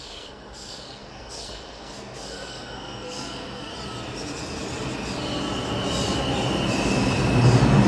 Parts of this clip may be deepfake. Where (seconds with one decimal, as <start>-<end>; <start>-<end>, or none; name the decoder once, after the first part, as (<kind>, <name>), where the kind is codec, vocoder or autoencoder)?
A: 0.0-3.7 (codec, SNAC)